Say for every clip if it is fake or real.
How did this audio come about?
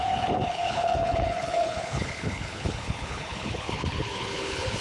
fake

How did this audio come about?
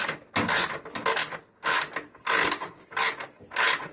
real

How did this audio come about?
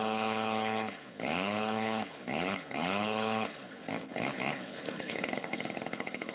fake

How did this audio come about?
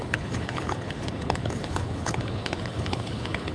fake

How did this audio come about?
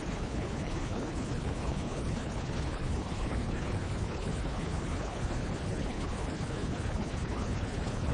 fake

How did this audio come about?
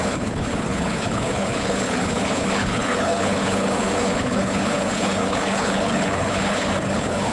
fake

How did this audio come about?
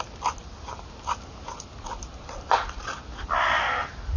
real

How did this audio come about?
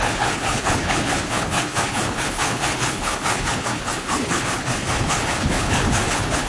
fake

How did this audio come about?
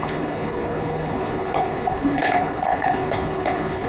fake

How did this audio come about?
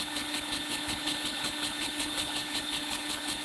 fake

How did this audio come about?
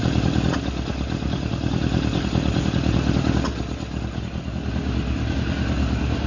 real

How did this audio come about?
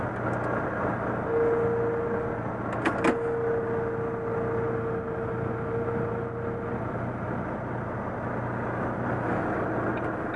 real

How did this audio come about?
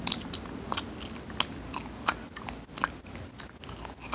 real